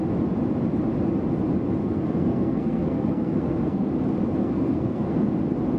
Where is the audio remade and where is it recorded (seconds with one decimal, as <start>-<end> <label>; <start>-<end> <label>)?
0.0-1.8 recorded; 1.8-3.9 remade; 3.9-4.4 recorded; 4.4-5.3 remade; 5.3-5.8 recorded

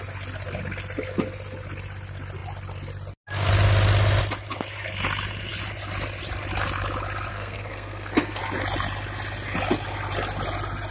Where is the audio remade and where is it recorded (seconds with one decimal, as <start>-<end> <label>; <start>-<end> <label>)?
0.0-7.3 recorded; 7.3-8.4 remade; 8.4-10.9 recorded

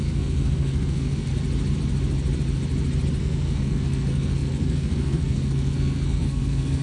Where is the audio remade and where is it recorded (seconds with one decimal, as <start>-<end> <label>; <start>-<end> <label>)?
0.0-1.3 remade; 1.3-3.2 recorded; 3.2-6.8 remade

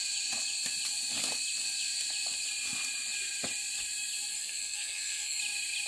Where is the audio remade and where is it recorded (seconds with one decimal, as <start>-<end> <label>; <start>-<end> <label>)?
0.0-4.3 recorded; 4.3-5.4 remade; 5.4-5.9 recorded

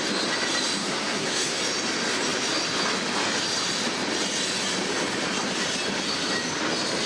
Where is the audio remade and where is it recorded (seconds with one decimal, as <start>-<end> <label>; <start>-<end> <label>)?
0.0-0.8 recorded; 0.8-1.6 remade; 1.6-7.1 recorded

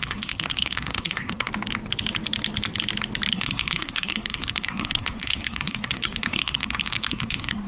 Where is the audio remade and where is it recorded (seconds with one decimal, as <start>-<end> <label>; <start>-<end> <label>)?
0.0-1.5 remade; 1.5-3.3 recorded; 3.3-7.7 remade